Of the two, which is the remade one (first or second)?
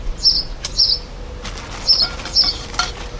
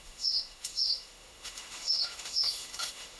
second